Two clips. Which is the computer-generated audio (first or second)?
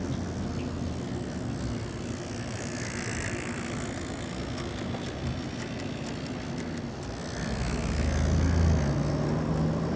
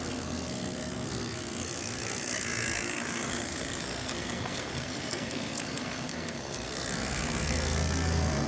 second